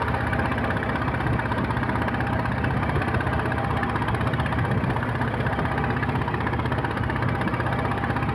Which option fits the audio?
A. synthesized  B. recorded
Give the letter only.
B